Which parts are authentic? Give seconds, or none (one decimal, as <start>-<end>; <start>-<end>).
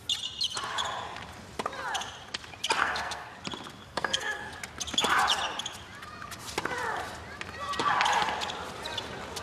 0.0-2.8; 3.3-3.8; 4.5-9.4